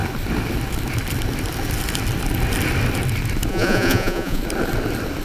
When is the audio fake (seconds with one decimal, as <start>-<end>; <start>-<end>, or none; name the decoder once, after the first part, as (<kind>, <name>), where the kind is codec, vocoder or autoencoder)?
3.5-4.4 (vocoder, Vocos)